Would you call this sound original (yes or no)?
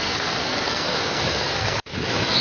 no